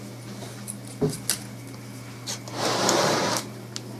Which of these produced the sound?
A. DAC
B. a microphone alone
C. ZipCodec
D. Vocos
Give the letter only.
B